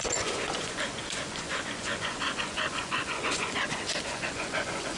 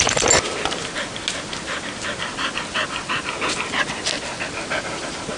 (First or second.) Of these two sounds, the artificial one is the first